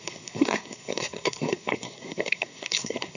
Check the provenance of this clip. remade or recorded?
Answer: remade